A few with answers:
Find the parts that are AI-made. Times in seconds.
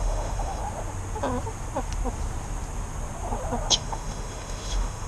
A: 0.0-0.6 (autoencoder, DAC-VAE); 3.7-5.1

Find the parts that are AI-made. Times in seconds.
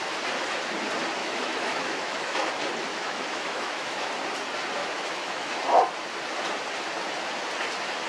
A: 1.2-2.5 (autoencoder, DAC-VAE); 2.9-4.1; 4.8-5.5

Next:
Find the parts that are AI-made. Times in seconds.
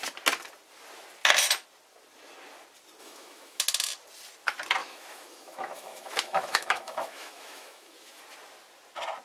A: 3.0-3.6 (autoencoder, DAC-VAE); 4.8-8.2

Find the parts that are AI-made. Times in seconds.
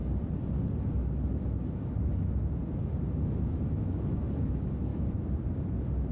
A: 1.4-2.1 (autoencoder, DAC-VAE); 2.8-4.9